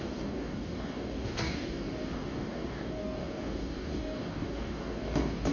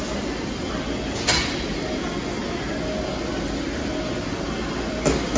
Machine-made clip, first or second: first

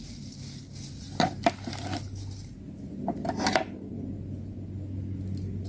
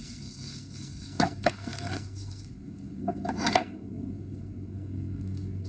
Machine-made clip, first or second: second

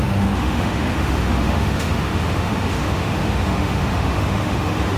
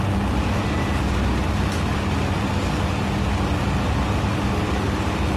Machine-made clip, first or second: first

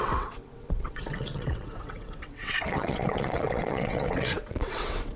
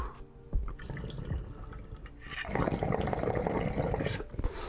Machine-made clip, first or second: first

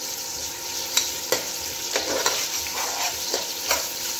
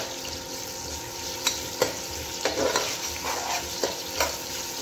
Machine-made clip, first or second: first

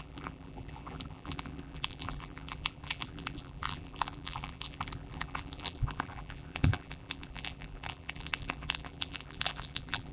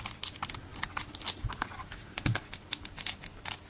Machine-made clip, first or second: first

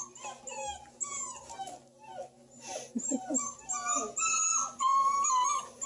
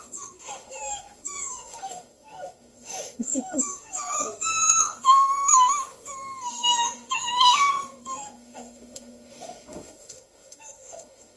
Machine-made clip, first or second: second